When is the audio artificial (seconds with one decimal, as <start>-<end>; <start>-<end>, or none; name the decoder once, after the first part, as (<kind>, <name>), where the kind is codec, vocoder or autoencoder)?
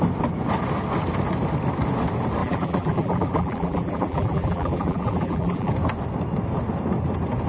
2.4-5.7 (vocoder, BigVGAN v2)